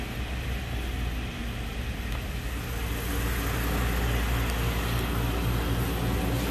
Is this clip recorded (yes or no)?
yes